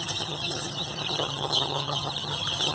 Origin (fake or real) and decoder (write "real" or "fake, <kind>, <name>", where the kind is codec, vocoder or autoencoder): fake, vocoder, HiFi-GAN